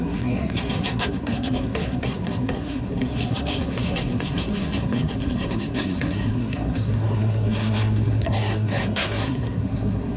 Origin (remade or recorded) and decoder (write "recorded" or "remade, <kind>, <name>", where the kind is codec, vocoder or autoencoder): remade, codec, SNAC